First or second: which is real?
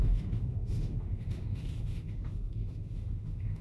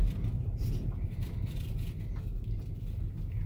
second